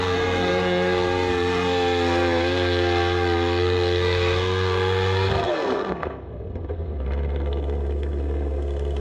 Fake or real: fake